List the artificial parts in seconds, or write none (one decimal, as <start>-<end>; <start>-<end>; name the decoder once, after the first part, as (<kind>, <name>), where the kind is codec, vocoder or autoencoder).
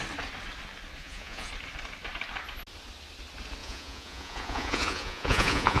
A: 1.0-1.5 (vocoder, Vocos); 3.6-5.8